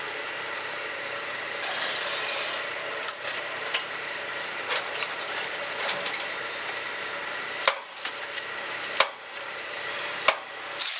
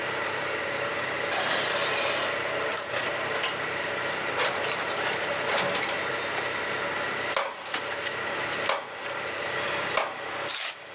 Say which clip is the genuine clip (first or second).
second